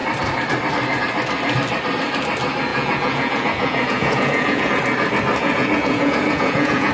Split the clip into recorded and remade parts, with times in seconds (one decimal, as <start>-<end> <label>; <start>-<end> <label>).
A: 0.0-2.7 recorded; 2.7-4.7 remade; 4.7-5.4 recorded; 5.4-6.9 remade